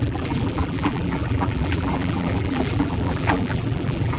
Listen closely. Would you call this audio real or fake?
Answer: fake